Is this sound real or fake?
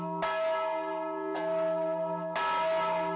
real